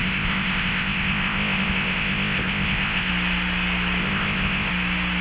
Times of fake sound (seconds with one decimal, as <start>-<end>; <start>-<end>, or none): 0.0-3.1; 4.0-4.7